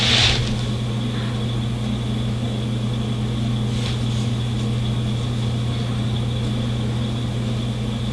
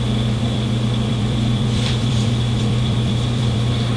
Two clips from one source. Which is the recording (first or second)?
first